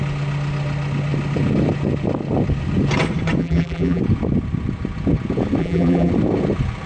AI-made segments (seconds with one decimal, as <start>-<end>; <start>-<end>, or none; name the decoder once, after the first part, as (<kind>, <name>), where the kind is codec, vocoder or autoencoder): 3.4-4.0 (vocoder, BigVGAN v2); 5.6-6.1